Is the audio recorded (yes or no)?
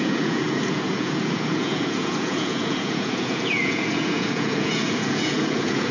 no